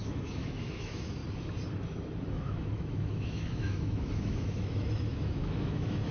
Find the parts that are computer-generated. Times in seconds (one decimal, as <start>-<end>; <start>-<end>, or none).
0.0-1.2; 2.2-6.1